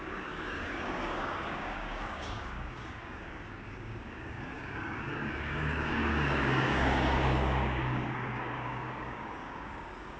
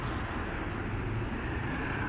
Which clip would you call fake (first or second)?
first